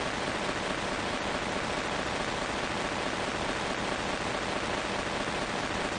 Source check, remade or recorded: recorded